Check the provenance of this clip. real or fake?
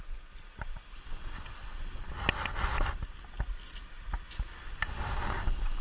real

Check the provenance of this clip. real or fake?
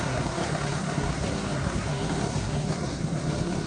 fake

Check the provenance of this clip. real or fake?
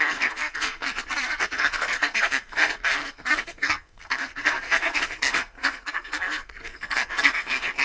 fake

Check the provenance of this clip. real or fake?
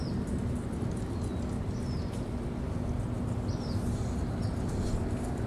real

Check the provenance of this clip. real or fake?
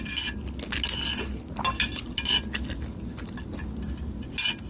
real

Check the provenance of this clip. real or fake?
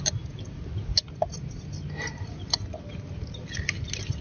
real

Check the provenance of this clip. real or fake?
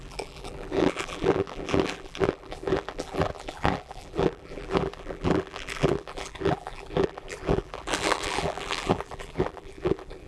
fake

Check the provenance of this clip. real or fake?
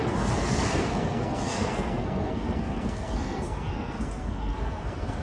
fake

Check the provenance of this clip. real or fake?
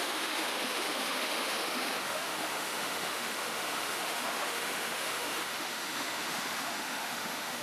fake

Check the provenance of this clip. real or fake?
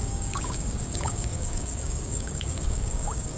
fake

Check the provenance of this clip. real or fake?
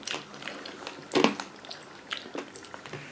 real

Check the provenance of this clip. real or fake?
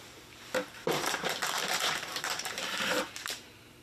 fake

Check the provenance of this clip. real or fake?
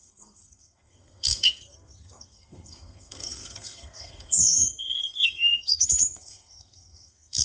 fake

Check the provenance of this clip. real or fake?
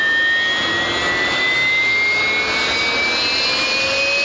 real